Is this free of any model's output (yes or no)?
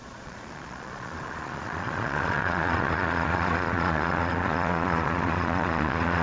no